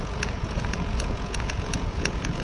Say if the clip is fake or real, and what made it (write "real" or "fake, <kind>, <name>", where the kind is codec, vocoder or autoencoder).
fake, vocoder, Vocos